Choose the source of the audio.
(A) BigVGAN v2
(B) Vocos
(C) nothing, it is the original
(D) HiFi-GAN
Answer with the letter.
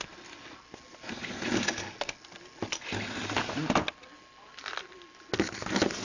C